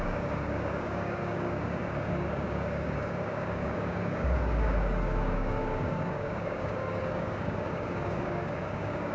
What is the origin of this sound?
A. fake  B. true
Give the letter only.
A